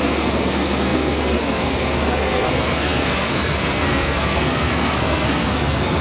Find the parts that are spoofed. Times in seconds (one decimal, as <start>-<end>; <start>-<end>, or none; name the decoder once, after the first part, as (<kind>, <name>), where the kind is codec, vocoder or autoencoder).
0.0-6.0 (codec, SNAC)

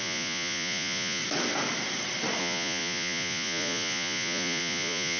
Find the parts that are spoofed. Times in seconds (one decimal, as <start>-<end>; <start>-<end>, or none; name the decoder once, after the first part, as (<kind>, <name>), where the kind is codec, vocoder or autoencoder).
0.0-1.2 (vocoder, Vocos); 2.4-5.2

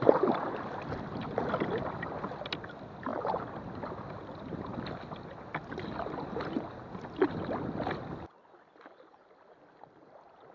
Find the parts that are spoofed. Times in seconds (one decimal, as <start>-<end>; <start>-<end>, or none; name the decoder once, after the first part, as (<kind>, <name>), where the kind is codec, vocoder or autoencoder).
none

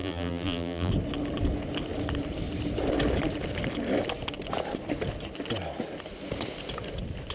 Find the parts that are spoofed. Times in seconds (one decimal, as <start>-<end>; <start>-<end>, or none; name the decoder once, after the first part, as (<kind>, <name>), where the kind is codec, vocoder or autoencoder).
0.0-0.9 (vocoder, BigVGAN v2)

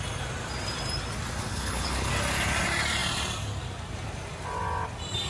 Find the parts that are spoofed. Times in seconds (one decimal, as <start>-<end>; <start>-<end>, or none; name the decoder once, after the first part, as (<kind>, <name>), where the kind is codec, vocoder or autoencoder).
1.5-2.1 (codec, HILCodec)

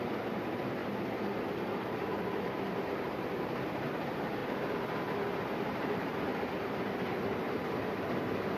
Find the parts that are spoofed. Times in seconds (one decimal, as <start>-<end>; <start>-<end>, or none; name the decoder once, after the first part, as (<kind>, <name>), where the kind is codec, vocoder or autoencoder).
0.0-0.8 (vocoder, BigVGAN v2); 1.6-4.4; 5.7-6.3

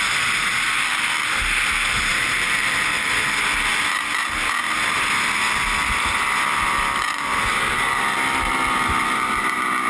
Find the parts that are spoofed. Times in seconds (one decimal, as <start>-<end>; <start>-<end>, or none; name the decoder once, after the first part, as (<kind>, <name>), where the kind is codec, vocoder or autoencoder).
2.1-3.2 (vocoder, BigVGAN v2)